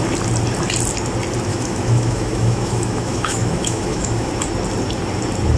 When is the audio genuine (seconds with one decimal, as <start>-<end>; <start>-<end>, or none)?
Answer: 0.0-1.5; 4.3-5.6